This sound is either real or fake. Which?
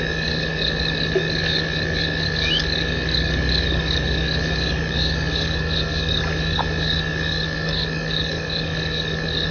fake